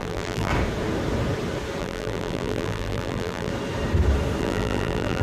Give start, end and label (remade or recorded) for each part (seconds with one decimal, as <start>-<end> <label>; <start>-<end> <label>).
0.0-0.5 remade; 0.5-1.8 recorded; 1.8-3.5 remade; 3.5-4.4 recorded; 4.4-5.2 remade